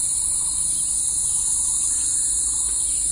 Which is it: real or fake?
real